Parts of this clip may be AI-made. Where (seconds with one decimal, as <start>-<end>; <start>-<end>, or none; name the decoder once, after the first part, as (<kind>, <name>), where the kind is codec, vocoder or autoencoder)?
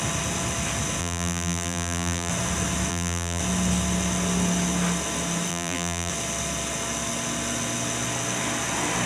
1.0-2.3 (vocoder, BigVGAN v2); 2.9-3.4; 5.5-6.1